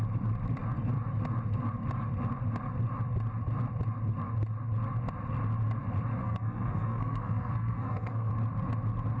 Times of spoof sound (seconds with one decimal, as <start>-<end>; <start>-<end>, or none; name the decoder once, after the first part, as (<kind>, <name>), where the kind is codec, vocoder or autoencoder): 6.2-8.3 (codec, SNAC)